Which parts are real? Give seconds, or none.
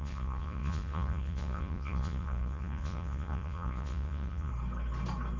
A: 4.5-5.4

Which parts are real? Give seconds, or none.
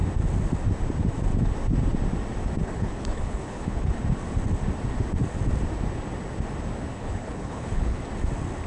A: 0.0-2.6; 4.0-6.9; 8.0-8.7